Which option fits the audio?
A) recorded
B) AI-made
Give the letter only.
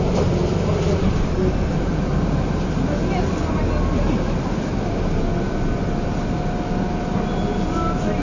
A